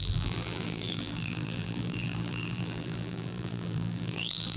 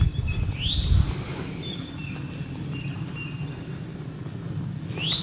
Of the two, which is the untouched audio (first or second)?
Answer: second